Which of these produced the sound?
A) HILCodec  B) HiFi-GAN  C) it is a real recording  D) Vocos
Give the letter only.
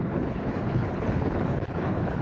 A